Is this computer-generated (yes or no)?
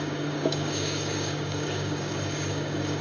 yes